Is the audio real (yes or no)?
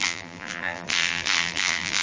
no